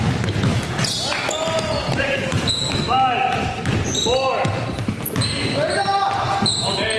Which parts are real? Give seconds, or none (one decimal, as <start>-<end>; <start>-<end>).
0.0-0.5; 1.1-1.8; 2.8-7.0